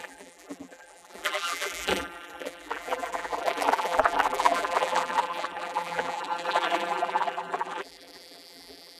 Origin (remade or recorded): remade